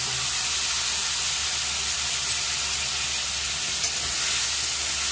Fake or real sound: real